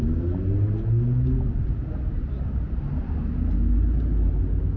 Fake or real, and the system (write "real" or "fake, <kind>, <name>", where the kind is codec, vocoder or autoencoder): real